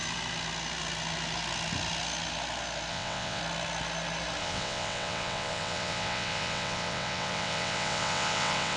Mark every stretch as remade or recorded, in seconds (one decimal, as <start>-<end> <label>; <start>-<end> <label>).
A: 0.0-2.9 recorded; 2.9-3.4 remade; 3.4-4.4 recorded; 4.4-8.8 remade